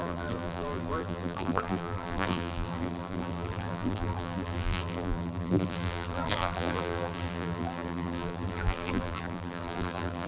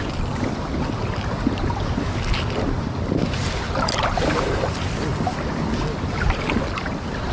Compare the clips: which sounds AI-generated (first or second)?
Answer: first